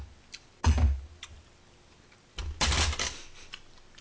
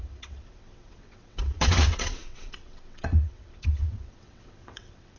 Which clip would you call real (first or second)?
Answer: first